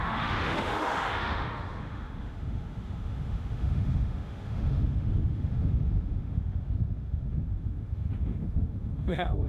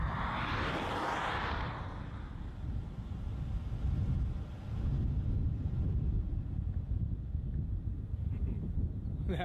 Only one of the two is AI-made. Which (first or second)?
first